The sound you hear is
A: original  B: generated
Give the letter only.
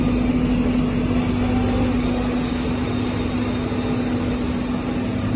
A